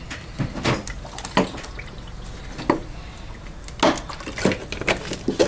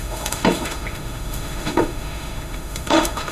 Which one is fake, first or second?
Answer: second